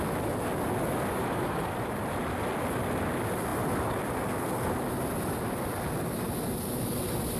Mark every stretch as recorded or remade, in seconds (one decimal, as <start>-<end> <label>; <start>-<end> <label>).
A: 0.0-1.2 recorded; 1.2-2.0 remade; 2.0-7.4 recorded